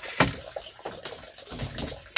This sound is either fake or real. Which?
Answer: real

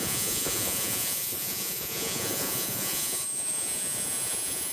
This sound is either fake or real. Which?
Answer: fake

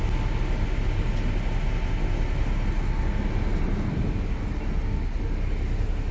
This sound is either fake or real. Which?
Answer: real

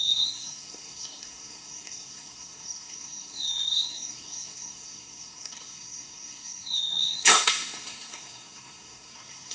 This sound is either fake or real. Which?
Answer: fake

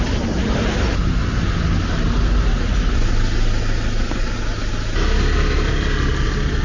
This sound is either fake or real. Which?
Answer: real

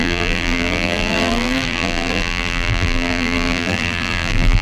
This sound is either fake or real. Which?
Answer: fake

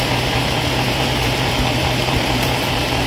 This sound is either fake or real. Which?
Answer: fake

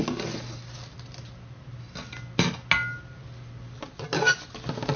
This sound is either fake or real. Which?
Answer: real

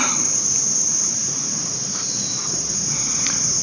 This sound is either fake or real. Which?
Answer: fake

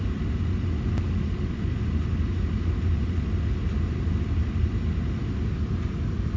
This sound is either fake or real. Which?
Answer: real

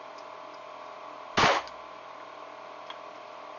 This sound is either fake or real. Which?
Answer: real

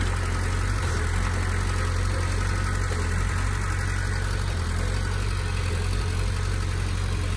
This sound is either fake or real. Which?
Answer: real